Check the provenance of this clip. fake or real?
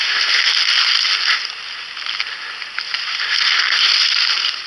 real